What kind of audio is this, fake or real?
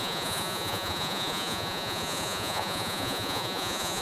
fake